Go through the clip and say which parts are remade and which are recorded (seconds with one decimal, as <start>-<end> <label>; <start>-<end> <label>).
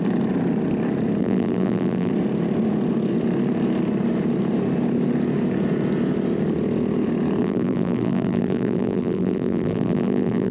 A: 0.0-1.2 recorded; 1.2-2.1 remade; 2.1-7.4 recorded; 7.4-10.5 remade